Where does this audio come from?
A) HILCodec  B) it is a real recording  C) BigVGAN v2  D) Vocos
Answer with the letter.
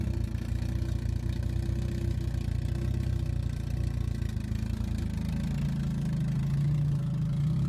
B